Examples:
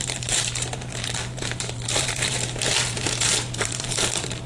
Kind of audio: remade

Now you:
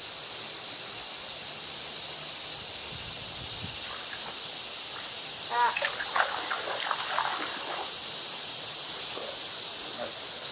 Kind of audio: recorded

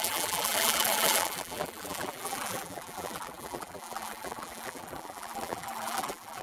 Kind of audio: remade